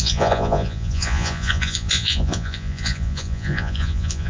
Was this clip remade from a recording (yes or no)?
yes